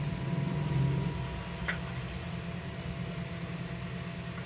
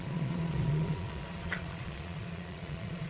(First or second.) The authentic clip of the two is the first